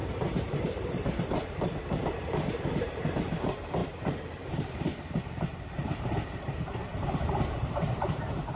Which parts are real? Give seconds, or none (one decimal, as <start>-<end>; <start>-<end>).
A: 4.9-5.6